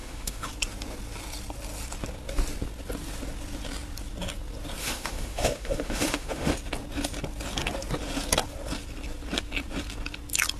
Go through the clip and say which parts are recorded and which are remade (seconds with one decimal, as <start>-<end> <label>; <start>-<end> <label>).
0.0-0.5 remade; 0.5-4.8 recorded; 4.8-6.5 remade; 6.5-10.6 recorded